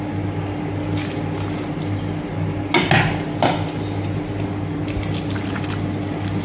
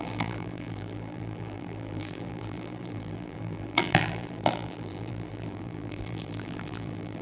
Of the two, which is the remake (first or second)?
second